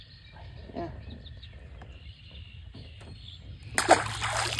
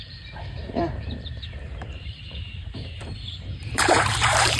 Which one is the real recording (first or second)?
first